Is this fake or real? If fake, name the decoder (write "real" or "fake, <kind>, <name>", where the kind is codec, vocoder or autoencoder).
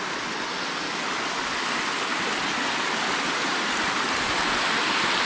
real